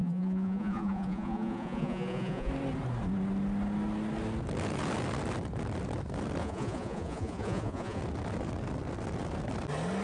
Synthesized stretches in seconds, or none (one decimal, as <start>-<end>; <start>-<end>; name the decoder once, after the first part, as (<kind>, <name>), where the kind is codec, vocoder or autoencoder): 0.0-2.5 (vocoder, Vocos); 6.4-8.0